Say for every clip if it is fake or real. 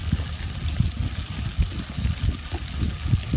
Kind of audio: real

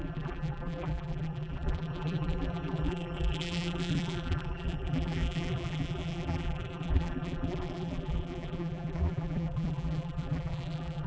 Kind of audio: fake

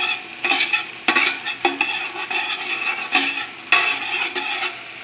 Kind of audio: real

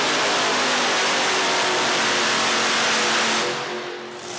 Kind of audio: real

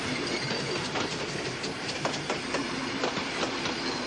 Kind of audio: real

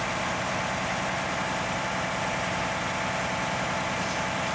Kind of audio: real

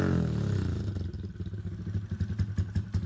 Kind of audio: real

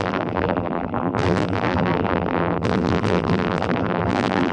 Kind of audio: fake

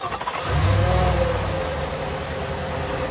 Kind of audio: real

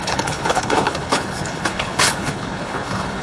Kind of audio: fake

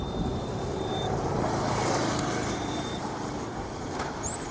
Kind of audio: fake